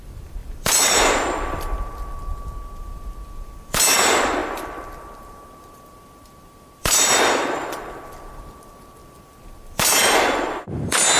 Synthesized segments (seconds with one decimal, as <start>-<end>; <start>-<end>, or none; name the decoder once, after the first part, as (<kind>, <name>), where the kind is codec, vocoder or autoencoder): 0.0-2.3 (vocoder, BigVGAN v2); 2.8-11.2